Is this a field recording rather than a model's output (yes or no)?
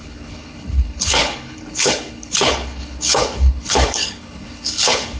no